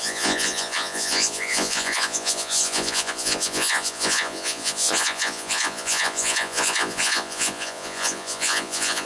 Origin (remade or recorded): remade